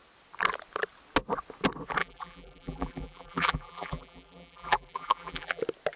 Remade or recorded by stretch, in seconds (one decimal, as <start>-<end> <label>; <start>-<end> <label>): 0.0-2.0 recorded; 2.0-5.6 remade; 5.6-6.0 recorded